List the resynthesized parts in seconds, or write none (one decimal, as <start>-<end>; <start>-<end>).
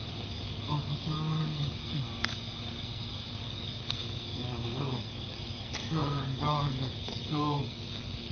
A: 0.0-8.3